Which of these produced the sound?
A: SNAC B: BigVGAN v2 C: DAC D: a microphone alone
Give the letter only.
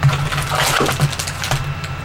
D